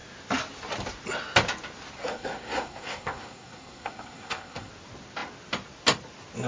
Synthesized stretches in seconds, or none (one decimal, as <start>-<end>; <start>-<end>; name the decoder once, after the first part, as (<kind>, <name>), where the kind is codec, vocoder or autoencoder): 2.0-4.7 (codec, SNAC)